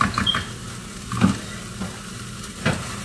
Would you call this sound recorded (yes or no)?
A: yes